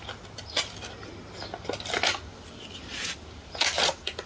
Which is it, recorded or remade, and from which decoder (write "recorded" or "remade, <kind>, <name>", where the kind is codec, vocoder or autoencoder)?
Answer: recorded